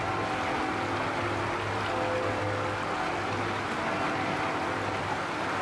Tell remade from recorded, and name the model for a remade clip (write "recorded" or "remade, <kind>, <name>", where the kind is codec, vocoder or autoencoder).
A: recorded